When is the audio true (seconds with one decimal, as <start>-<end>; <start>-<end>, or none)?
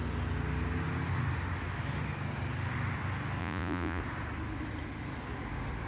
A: 0.0-3.4; 4.0-5.9